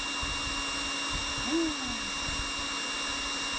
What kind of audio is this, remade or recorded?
recorded